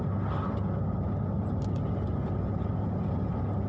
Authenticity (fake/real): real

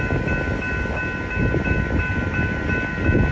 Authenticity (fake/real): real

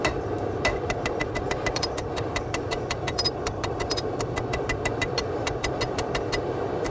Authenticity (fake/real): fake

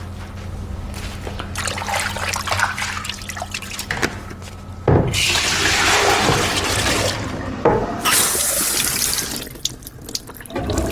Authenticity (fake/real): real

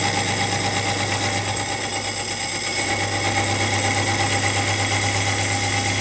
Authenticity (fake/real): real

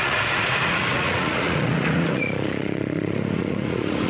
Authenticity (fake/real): fake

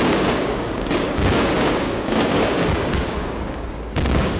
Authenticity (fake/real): fake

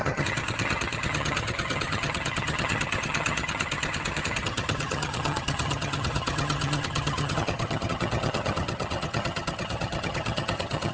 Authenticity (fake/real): fake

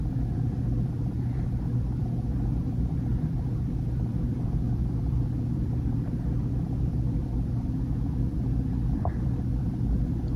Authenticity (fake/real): fake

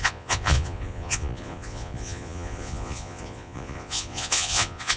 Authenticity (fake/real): fake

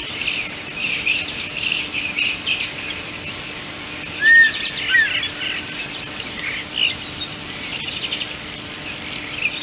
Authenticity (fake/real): real